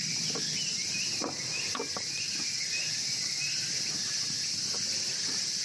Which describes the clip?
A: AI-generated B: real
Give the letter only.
B